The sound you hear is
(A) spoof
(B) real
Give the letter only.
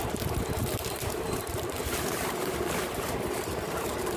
A